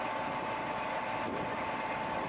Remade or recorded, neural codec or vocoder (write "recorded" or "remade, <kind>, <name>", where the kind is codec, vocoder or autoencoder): remade, vocoder, BigVGAN v2